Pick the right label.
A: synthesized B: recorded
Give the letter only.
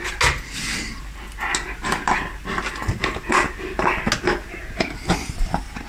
B